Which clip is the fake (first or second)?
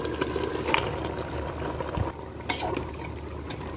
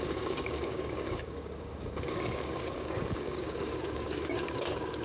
second